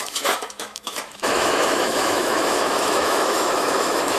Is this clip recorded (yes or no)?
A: no